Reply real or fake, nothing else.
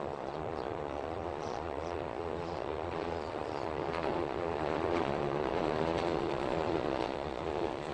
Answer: fake